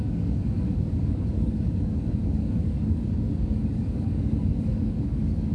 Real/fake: fake